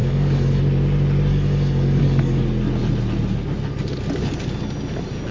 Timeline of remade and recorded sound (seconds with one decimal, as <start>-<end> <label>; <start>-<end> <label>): 0.0-0.6 remade; 0.6-1.3 recorded; 1.3-2.4 remade; 2.4-5.3 recorded